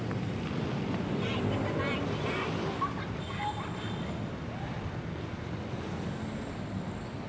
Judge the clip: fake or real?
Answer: real